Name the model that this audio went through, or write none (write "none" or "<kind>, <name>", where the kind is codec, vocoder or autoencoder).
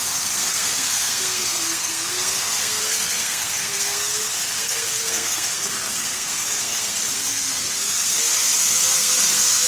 codec, SNAC